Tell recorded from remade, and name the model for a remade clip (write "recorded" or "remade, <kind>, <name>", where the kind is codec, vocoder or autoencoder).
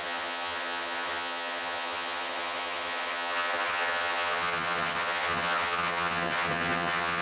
remade, vocoder, HiFi-GAN